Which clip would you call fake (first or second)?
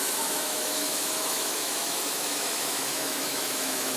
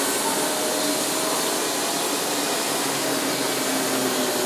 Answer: first